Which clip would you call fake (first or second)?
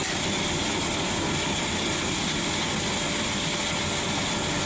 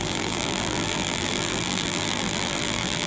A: second